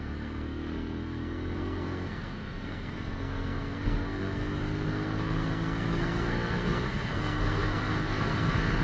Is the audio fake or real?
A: fake